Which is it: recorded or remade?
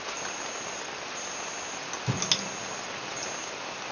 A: recorded